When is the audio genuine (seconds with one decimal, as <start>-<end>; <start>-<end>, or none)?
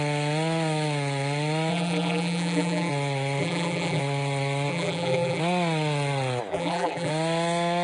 0.0-1.7; 2.9-3.4; 4.0-4.7; 5.4-6.5; 7.1-7.8